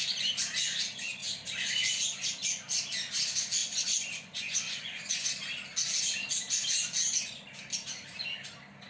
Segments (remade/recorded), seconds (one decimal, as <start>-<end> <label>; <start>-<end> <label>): 0.0-3.6 recorded; 3.6-5.1 remade; 5.1-8.9 recorded